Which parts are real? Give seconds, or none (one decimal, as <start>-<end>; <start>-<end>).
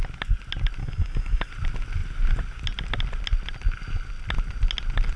0.0-0.8; 1.5-5.2